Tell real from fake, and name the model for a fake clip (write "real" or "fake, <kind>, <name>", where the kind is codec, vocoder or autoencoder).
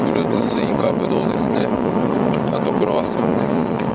fake, vocoder, Vocos